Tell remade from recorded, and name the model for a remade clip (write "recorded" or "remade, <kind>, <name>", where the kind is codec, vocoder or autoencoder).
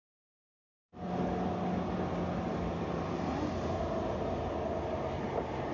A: recorded